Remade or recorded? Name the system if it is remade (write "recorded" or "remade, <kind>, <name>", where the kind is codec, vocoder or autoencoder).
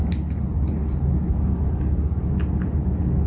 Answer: recorded